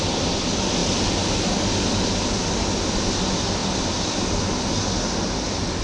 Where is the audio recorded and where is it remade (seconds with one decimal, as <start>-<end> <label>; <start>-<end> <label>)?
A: 0.0-5.8 recorded

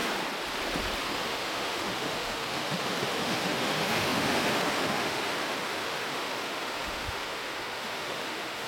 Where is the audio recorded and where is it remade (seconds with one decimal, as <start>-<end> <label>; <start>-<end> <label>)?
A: 0.0-1.0 recorded; 1.0-8.7 remade

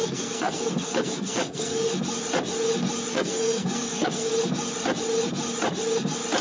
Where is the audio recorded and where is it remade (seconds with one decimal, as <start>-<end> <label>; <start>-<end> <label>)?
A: 0.0-1.9 remade; 1.9-3.1 recorded; 3.1-4.3 remade; 4.3-6.4 recorded

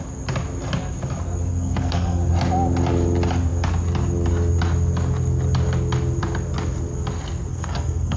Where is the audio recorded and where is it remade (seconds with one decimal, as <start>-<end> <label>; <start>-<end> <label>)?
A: 0.0-1.5 recorded; 1.5-2.3 remade; 2.3-7.5 recorded; 7.5-8.2 remade

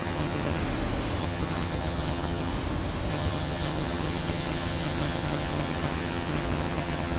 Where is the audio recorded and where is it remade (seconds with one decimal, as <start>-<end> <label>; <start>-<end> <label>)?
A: 0.0-0.6 remade; 0.6-1.2 recorded; 1.2-2.5 remade; 2.5-3.1 recorded; 3.1-7.2 remade